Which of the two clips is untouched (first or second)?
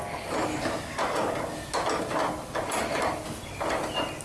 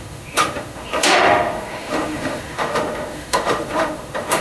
first